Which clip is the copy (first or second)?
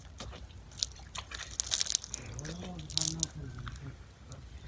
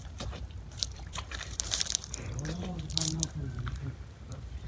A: second